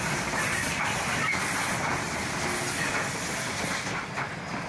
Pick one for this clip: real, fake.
real